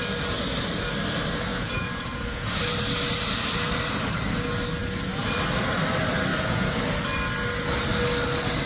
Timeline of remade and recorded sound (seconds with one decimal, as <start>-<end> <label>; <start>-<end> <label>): 0.0-1.5 recorded; 1.5-2.6 remade; 2.6-6.3 recorded; 6.3-6.8 remade; 6.8-8.7 recorded